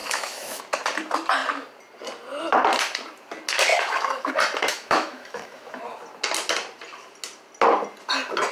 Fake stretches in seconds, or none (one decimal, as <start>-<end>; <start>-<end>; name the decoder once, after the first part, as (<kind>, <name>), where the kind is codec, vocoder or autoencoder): 0.0-0.6 (autoencoder, DAC-VAE); 3.7-4.3; 4.7-5.8